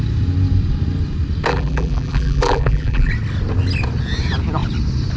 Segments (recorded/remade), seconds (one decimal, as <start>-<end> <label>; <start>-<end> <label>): 0.0-1.5 recorded; 1.5-3.1 remade; 3.1-5.2 recorded